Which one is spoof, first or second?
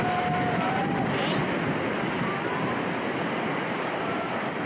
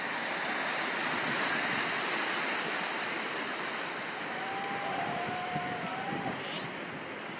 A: second